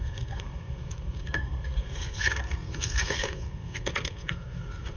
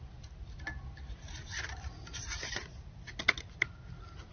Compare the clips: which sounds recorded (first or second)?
second